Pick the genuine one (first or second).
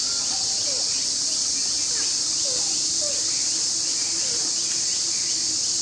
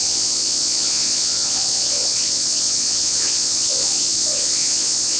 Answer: first